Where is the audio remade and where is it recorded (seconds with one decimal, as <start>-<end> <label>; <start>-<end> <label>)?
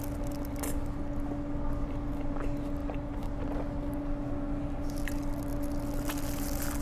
0.0-6.8 recorded